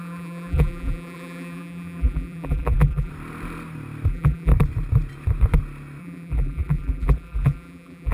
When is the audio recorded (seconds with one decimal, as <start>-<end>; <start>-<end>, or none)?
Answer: 3.1-4.1; 4.5-6.0